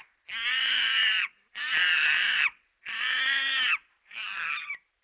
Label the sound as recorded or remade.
remade